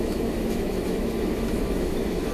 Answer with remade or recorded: remade